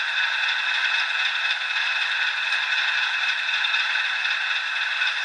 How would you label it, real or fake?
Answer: real